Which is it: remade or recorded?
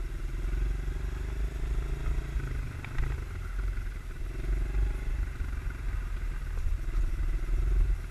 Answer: recorded